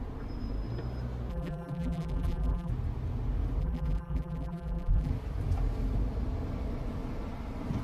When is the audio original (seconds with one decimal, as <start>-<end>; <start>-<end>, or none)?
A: 0.0-1.3; 2.7-3.6; 5.1-7.8

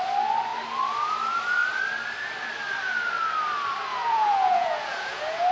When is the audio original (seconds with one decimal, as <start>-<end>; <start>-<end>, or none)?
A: 0.0-3.9

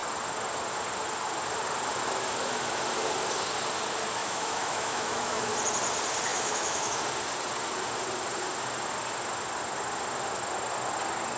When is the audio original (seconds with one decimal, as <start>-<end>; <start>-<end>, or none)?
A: 0.0-4.2; 5.5-6.3; 7.0-11.4

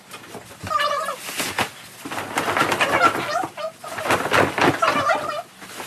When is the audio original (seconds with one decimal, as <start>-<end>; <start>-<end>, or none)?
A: 0.0-5.9

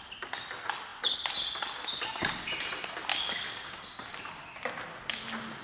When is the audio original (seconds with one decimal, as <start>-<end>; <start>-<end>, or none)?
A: 0.0-3.1; 3.8-5.6

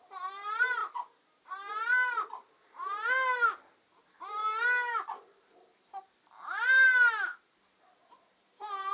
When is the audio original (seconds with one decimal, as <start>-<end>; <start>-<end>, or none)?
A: 0.0-8.9

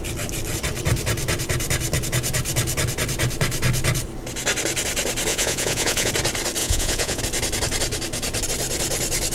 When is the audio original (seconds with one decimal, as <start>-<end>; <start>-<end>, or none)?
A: 0.0-5.3; 6.1-6.6; 7.2-9.3